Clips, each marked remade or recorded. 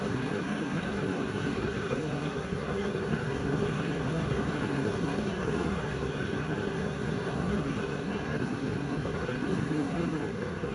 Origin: remade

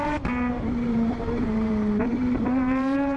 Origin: remade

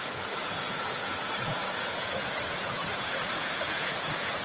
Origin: remade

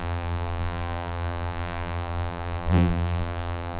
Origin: remade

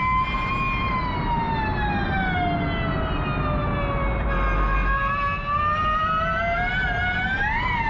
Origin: recorded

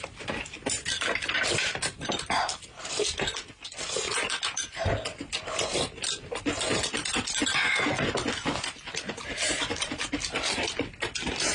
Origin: recorded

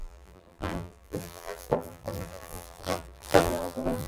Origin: remade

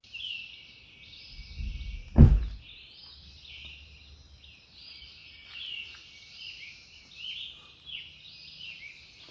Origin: recorded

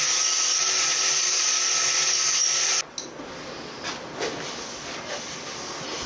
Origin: recorded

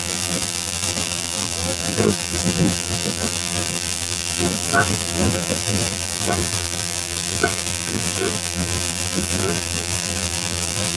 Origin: remade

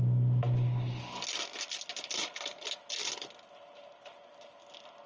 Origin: recorded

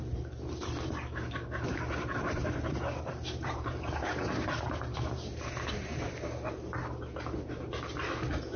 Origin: remade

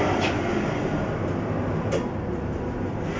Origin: recorded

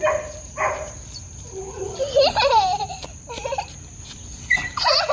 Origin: remade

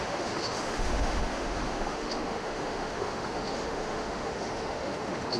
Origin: remade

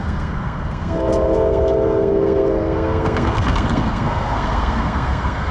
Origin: remade